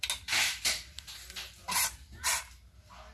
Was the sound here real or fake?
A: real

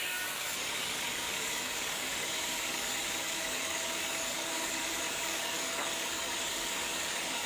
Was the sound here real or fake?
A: fake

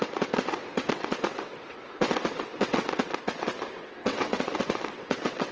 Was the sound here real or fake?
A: fake